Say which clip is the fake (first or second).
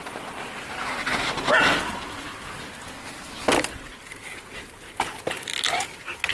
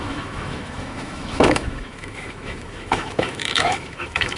second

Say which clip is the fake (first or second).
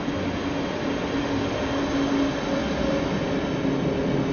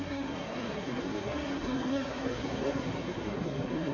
second